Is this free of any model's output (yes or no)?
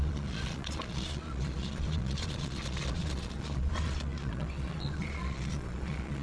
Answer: no